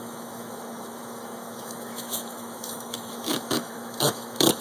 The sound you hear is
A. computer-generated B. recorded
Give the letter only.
A